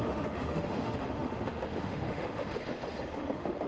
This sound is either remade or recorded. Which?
remade